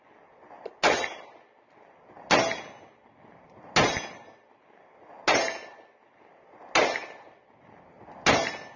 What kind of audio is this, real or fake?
real